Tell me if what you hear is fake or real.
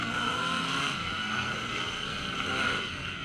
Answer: fake